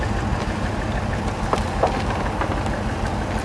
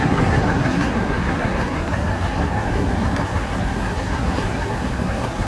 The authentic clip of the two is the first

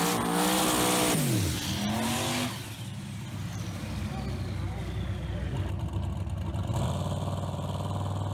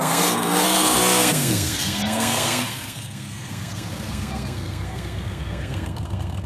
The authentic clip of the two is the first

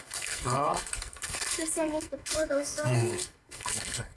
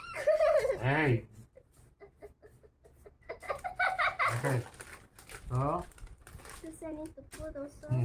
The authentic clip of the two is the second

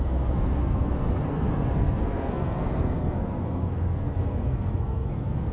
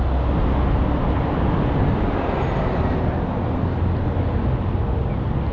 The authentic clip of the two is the second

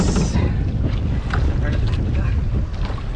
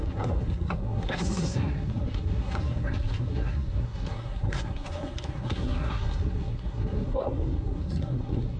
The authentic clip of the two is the first